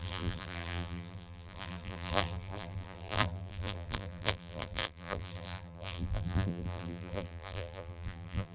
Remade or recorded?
remade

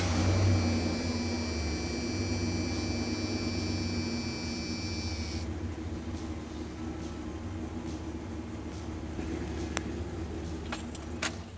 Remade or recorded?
recorded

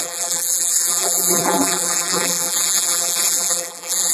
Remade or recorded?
remade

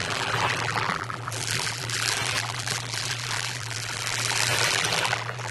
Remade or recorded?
remade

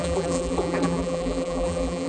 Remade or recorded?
remade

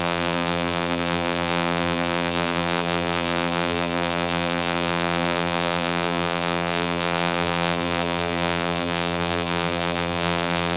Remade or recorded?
remade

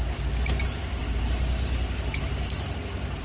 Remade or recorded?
recorded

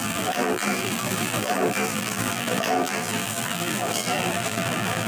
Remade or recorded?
remade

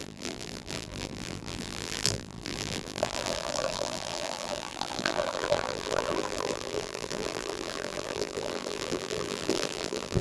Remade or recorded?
remade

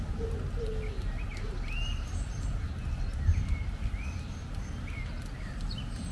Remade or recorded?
recorded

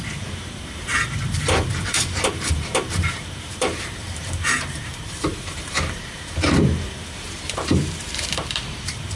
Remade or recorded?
remade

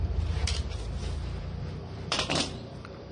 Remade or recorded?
remade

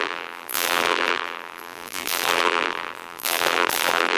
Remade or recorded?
remade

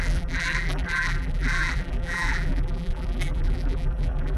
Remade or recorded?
remade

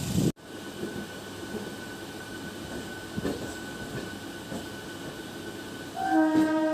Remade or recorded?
recorded